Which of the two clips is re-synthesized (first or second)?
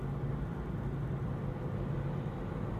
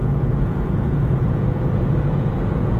second